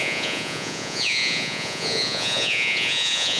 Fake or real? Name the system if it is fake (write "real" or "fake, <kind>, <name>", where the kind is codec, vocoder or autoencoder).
fake, vocoder, Vocos